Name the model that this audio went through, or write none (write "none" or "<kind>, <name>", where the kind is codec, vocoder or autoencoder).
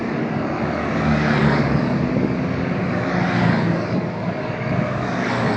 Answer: codec, DAC